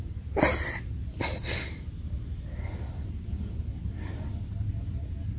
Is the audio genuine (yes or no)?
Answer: yes